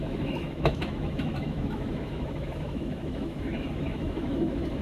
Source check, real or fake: fake